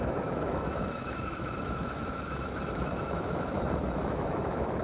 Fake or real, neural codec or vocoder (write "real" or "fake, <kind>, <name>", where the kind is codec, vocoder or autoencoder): fake, autoencoder, DAC-VAE